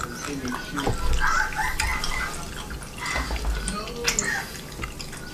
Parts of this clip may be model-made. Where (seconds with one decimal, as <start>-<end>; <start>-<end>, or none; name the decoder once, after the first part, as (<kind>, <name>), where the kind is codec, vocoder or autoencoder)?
none